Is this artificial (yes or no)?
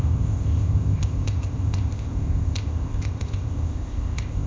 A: yes